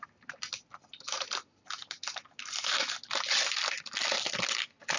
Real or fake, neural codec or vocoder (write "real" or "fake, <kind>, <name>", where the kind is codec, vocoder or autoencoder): real